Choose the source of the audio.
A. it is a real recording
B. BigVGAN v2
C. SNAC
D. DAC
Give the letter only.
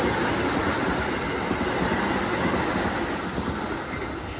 A